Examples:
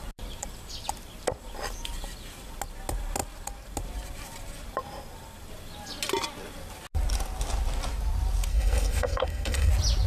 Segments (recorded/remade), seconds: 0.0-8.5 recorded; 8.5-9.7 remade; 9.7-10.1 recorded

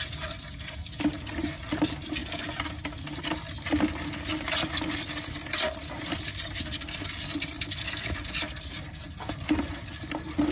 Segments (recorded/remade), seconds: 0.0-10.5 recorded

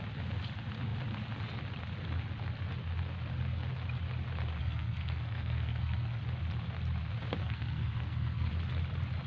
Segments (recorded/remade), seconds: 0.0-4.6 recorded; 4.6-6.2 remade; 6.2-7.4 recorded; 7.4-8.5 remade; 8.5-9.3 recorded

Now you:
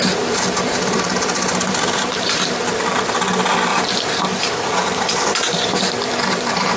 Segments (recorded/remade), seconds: 0.0-3.0 remade; 3.0-3.7 recorded; 3.7-4.2 remade; 4.2-4.8 recorded; 4.8-6.8 remade

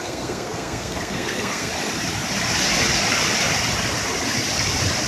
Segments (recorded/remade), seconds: 0.0-1.7 remade; 1.7-5.1 recorded

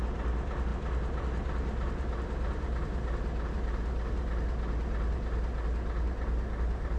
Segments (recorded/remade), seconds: 0.0-7.0 recorded